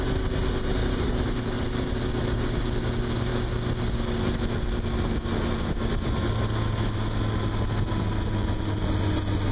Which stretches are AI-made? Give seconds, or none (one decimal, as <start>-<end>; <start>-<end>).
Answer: none